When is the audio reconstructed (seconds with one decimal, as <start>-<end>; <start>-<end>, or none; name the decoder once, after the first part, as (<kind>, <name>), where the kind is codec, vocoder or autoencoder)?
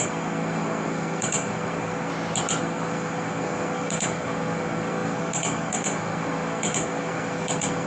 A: 0.0-2.1 (codec, SNAC); 2.6-7.9